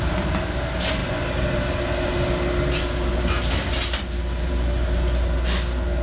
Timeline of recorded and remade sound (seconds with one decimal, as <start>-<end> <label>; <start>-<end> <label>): 0.0-6.0 recorded